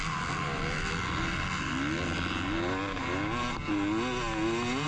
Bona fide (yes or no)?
yes